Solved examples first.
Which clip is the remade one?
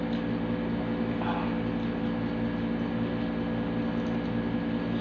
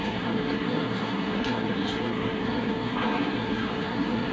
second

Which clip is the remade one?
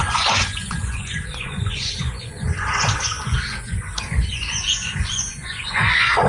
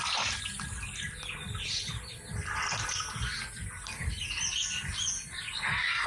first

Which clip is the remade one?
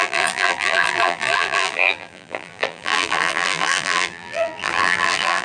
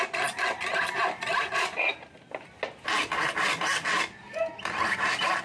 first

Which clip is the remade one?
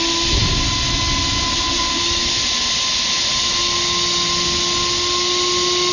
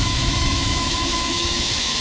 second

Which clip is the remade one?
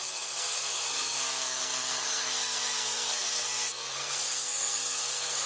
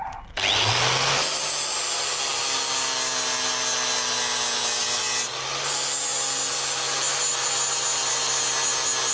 first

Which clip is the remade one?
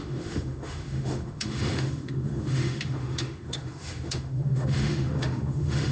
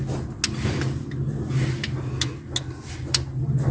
first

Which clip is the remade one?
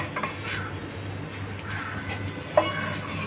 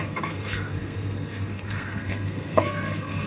second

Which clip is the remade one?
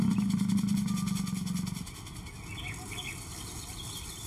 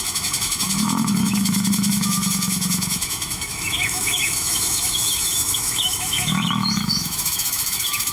second